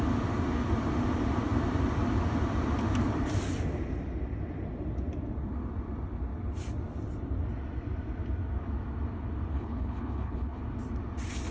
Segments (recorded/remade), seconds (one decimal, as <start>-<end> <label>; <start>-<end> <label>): 0.0-9.5 recorded; 9.5-10.6 remade; 10.6-11.5 recorded